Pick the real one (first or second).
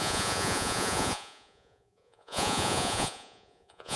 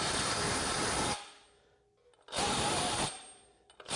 second